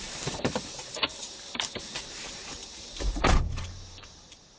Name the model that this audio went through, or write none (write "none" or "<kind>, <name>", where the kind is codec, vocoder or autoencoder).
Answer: vocoder, BigVGAN v2